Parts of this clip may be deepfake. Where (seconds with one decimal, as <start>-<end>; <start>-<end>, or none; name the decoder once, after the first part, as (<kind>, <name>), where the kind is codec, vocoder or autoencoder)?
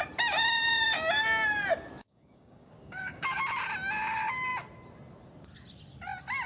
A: 2.0-3.4 (codec, DAC)